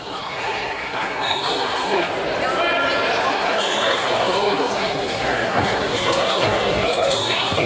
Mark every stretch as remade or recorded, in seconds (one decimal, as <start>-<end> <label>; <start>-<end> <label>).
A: 0.0-2.1 remade; 2.1-3.3 recorded; 3.3-7.7 remade